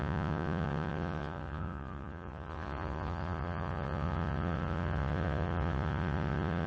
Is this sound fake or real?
fake